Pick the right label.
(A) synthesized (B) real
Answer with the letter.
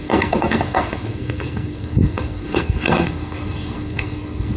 A